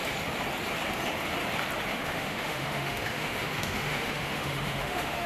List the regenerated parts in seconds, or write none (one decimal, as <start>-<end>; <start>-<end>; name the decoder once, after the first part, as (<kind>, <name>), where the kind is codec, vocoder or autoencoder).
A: 1.9-5.3 (autoencoder, DAC-VAE)